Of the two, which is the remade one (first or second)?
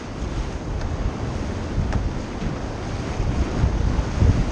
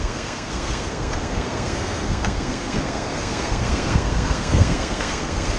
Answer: second